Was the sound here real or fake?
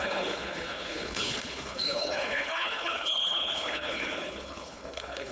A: fake